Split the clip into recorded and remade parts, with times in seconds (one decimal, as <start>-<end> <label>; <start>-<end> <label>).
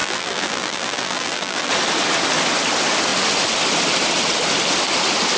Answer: 0.0-1.7 remade; 1.7-5.4 recorded